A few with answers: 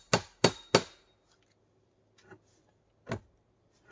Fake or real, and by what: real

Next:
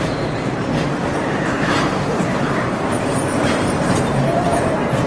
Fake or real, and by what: fake, vocoder, BigVGAN v2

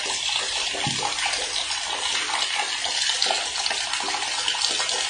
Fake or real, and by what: real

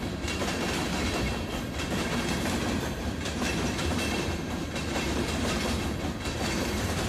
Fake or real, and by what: fake, vocoder, BigVGAN v2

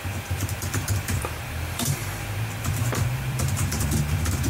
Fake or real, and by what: fake, vocoder, BigVGAN v2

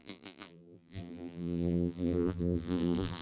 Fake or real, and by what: fake, vocoder, BigVGAN v2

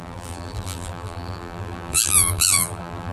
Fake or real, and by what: fake, vocoder, BigVGAN v2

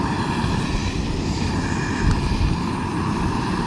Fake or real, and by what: real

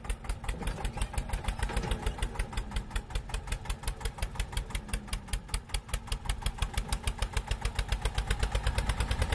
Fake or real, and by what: real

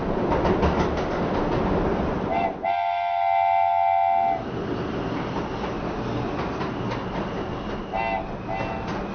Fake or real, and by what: real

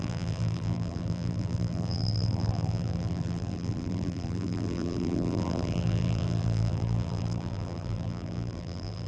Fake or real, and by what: fake, vocoder, BigVGAN v2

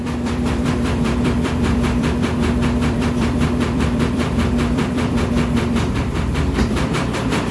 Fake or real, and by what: fake, vocoder, BigVGAN v2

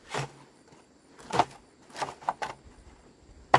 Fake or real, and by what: real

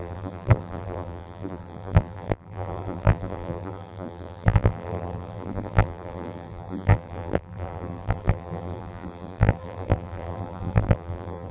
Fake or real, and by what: fake, vocoder, BigVGAN v2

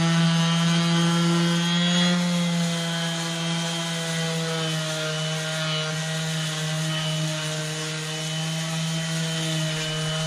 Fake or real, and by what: real